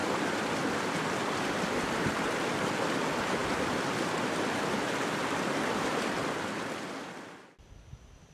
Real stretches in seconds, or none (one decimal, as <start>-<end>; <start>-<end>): 2.1-3.4; 6.0-8.3